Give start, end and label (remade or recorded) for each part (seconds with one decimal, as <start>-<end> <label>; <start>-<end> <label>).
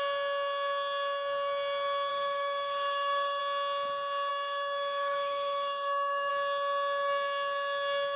0.0-2.1 recorded; 2.1-3.4 remade; 3.4-4.3 recorded; 4.3-6.3 remade; 6.3-8.2 recorded